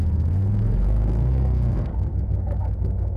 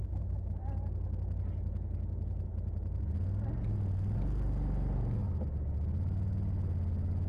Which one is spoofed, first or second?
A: first